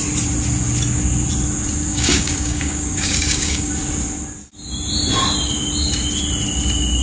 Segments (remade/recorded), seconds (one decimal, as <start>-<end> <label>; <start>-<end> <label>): 0.0-1.9 recorded; 1.9-3.7 remade; 3.7-7.0 recorded